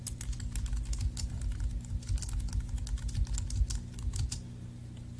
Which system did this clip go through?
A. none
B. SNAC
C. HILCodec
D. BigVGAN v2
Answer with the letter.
A